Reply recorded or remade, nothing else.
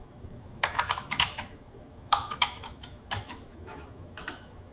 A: remade